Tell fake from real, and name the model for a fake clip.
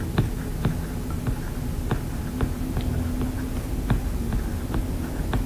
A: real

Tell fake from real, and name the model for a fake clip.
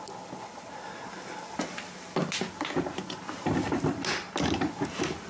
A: real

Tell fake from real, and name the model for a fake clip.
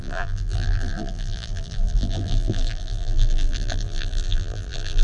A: fake, vocoder, BigVGAN v2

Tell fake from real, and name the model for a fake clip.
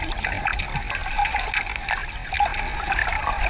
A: real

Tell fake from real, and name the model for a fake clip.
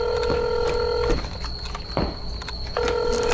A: real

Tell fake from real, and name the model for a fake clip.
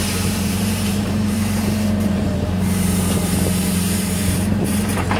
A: fake, vocoder, BigVGAN v2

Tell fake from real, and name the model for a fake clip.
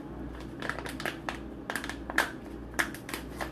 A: real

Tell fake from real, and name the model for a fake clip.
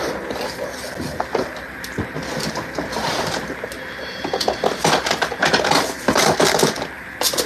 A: real